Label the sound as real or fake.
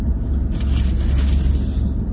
real